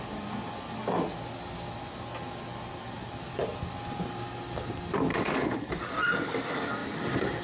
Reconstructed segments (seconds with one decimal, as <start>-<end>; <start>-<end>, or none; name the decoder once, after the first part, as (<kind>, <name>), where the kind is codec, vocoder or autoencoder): 5.1-5.7 (codec, HILCodec)